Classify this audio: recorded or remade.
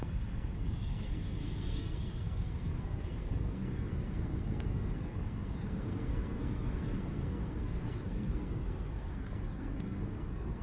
remade